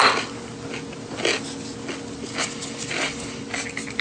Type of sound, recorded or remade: recorded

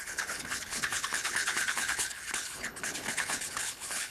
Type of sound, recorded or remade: remade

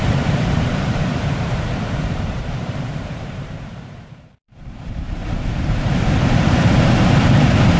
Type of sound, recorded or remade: remade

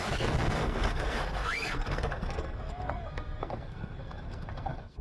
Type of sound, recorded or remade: remade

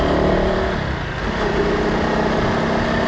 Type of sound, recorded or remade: recorded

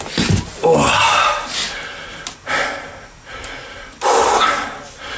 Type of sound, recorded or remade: recorded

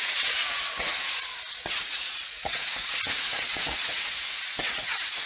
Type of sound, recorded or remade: remade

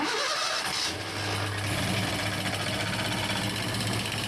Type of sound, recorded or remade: recorded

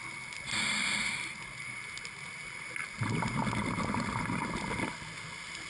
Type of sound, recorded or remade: recorded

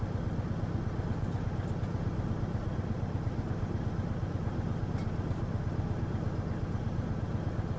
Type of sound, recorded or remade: recorded